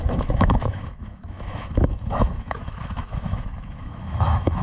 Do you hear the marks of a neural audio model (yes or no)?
yes